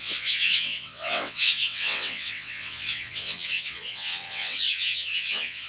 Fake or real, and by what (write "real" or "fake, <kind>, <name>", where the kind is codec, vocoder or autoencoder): fake, vocoder, WaveNeXt